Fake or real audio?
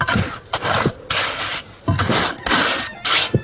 real